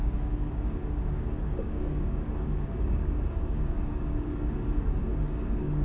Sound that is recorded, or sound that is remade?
remade